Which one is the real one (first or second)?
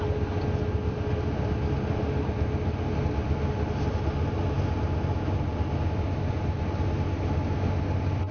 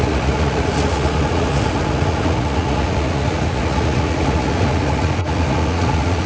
first